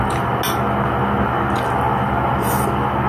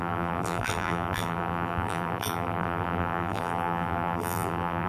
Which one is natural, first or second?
first